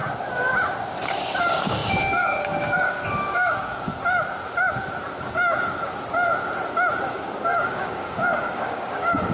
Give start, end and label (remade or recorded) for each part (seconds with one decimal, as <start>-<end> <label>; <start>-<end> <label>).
0.0-1.4 recorded; 1.4-3.9 remade; 3.9-7.0 recorded; 7.0-9.3 remade